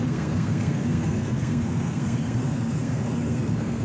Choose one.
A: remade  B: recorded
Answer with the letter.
A